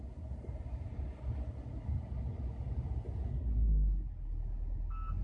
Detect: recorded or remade recorded